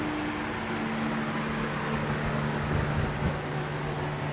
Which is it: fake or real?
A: real